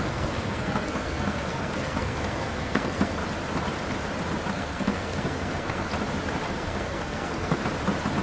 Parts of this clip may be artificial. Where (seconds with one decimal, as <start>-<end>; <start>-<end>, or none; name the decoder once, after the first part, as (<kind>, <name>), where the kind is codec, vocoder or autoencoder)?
0.0-3.2 (codec, SNAC); 4.5-5.9; 6.5-7.6